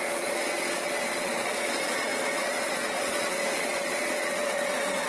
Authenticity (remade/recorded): remade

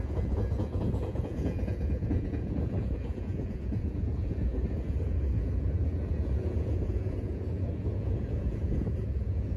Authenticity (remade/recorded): remade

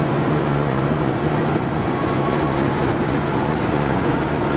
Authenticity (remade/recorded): remade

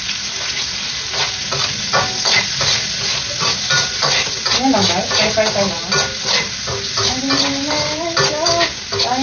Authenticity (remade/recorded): recorded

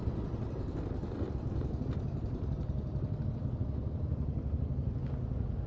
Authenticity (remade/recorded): recorded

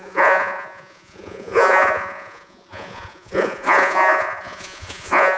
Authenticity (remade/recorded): remade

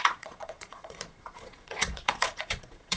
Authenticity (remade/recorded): remade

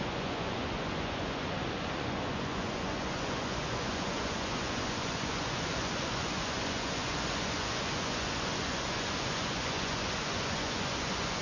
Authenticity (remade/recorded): remade